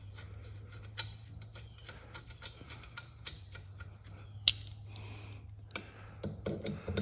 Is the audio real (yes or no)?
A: yes